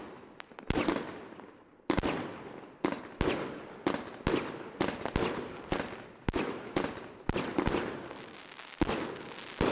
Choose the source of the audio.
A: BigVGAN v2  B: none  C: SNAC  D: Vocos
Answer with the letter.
B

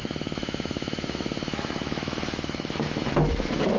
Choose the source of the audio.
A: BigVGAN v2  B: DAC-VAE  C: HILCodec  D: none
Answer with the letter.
B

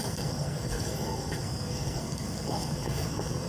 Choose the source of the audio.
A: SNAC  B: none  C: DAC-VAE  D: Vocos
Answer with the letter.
A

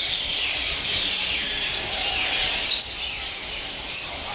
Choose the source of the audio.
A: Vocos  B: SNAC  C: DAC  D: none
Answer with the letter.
D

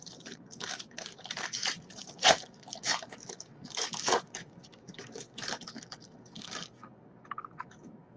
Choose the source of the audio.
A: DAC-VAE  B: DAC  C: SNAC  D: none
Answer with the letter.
B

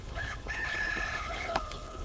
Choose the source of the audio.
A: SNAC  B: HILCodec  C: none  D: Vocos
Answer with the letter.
B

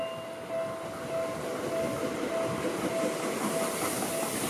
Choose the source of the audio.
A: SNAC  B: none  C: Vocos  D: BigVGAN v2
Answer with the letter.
B